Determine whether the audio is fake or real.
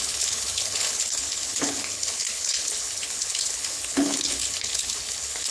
fake